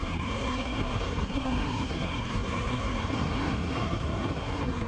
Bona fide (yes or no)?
no